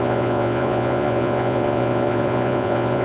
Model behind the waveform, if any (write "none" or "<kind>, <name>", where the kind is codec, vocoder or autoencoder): vocoder, Vocos